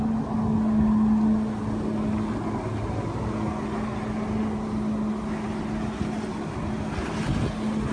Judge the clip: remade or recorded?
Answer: recorded